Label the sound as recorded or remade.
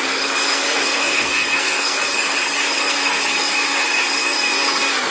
remade